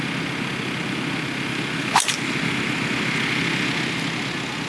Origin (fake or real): real